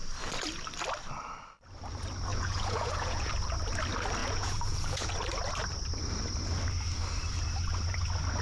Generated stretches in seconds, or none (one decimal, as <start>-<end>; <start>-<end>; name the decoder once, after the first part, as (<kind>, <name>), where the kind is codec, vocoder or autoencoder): 2.3-3.3 (vocoder, Vocos); 4.2-5.2